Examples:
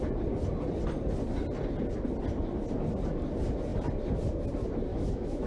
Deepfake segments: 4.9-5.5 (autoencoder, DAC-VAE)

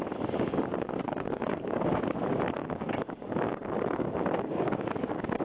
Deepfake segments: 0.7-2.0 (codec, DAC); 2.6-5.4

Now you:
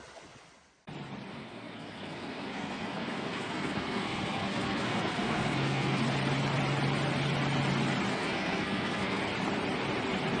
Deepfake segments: 1.3-6.0 (codec, SNAC); 8.1-9.2

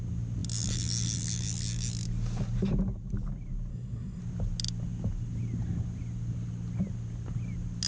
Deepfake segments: 3.7-4.2 (codec, SNAC)

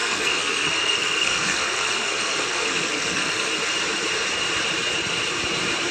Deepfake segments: 0.0-3.5 (codec, SNAC)

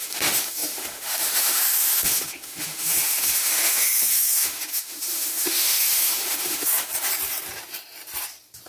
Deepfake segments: 0.0-6.9 (autoencoder, DAC-VAE)